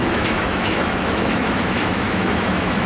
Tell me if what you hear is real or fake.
fake